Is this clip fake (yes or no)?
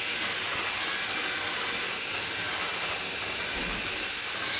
no